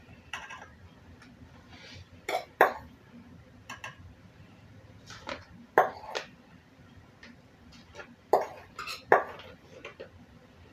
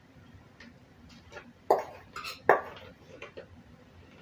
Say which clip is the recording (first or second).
second